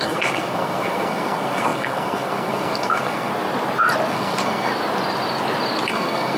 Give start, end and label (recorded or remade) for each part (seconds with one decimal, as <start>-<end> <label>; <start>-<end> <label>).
0.0-3.3 remade; 3.3-4.1 recorded; 4.1-4.7 remade; 4.7-5.9 recorded; 5.9-6.4 remade